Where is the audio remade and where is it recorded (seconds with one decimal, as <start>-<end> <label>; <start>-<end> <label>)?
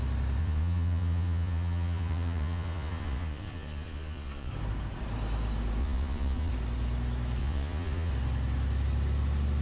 0.0-0.4 recorded; 0.4-4.5 remade; 4.5-5.8 recorded; 5.8-6.5 remade; 6.5-7.4 recorded; 7.4-8.1 remade; 8.1-9.6 recorded